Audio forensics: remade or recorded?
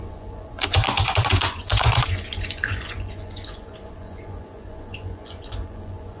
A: remade